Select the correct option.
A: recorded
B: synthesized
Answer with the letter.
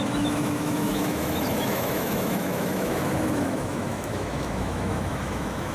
B